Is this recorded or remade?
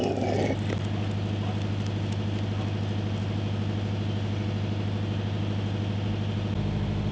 recorded